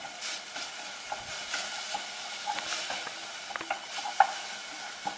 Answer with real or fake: real